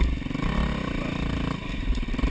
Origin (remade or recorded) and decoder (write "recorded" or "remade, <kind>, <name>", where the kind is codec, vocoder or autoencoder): recorded